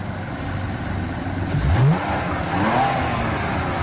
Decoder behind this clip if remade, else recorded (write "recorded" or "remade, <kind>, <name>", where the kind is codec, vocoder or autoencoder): recorded